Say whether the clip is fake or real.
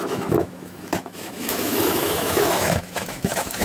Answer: fake